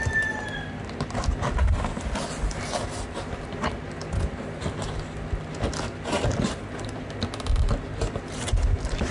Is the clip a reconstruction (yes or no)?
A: no